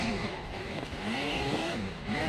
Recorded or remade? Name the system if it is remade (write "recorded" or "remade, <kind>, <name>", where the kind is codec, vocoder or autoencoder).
remade, codec, DAC